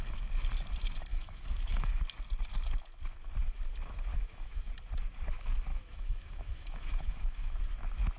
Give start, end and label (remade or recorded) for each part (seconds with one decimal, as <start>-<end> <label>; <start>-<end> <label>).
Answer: 0.0-1.1 recorded; 1.1-2.0 remade; 2.0-4.1 recorded; 4.1-4.7 remade; 4.7-5.7 recorded; 5.7-7.6 remade; 7.6-8.2 recorded